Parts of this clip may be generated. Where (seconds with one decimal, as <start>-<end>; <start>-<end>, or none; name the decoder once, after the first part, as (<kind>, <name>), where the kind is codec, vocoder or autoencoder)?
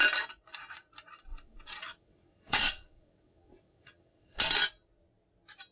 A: 1.3-4.4 (vocoder, WaveNeXt)